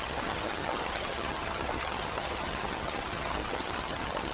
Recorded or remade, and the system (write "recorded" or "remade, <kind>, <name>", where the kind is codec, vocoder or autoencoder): remade, vocoder, HiFi-GAN